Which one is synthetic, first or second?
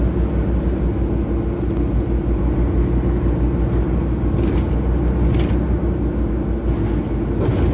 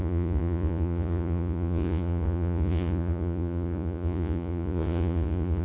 second